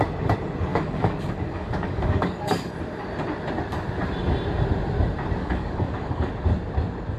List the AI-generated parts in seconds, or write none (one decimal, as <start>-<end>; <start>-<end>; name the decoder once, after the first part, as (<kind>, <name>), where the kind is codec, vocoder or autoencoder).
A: 0.7-2.7 (codec, DAC); 5.4-6.3